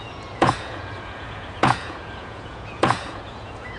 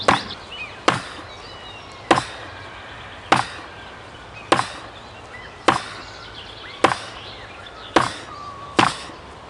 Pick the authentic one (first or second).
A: second